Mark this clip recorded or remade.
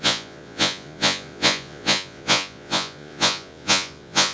remade